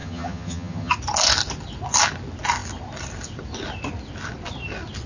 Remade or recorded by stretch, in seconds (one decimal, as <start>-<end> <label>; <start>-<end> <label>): 0.0-0.9 remade; 0.9-5.1 recorded